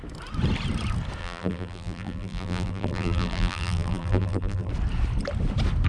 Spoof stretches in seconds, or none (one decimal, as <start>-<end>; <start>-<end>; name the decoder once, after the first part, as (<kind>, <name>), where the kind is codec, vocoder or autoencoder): 1.2-4.7 (vocoder, BigVGAN v2)